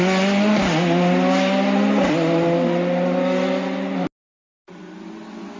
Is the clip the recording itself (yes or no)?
yes